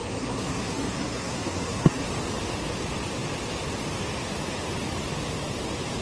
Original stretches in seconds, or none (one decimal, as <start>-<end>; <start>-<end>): 2.1-6.0